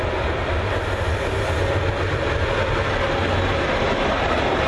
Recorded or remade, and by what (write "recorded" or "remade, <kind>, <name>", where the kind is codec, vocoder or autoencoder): recorded